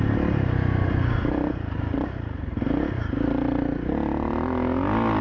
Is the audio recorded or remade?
recorded